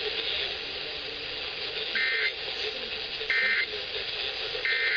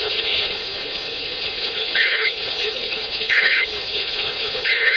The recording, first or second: first